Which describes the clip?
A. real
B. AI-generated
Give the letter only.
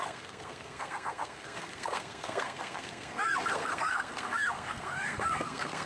B